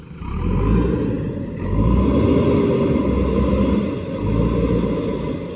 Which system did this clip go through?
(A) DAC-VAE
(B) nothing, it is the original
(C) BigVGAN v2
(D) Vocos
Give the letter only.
B